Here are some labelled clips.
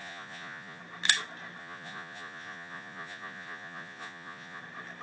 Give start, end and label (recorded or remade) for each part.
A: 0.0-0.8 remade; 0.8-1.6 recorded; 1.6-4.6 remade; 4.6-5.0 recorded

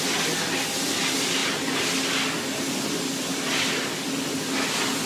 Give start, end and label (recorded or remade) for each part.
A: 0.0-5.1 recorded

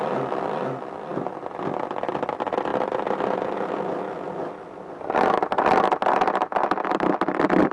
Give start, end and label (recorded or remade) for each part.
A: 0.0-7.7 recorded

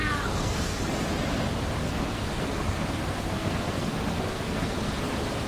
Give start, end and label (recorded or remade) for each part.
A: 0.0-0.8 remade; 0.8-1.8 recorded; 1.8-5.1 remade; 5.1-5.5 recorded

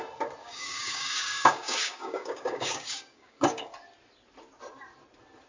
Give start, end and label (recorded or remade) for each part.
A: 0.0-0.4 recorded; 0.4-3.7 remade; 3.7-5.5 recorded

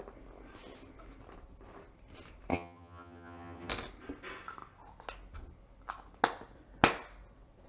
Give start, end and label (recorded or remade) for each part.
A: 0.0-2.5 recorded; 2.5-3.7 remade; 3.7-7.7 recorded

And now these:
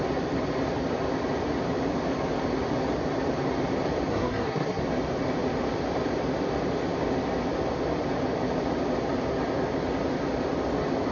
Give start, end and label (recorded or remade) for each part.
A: 0.0-4.1 recorded; 4.1-4.8 remade; 4.8-11.1 recorded